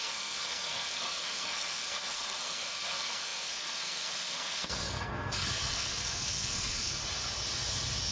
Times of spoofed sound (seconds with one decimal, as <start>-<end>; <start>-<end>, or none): 0.0-7.0